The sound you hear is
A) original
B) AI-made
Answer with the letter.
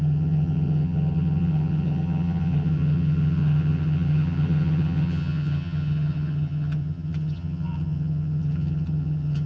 B